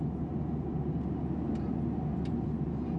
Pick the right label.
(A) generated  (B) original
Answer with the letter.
B